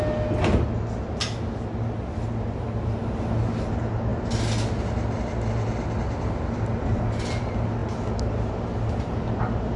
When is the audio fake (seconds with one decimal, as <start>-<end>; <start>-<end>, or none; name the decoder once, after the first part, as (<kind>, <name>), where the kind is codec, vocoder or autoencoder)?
none